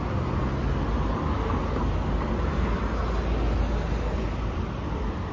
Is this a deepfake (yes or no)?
no